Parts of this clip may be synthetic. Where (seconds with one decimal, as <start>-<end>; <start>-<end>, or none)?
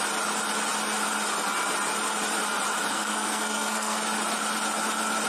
2.9-4.0